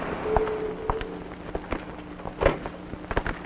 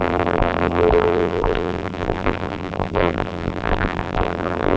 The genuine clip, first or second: first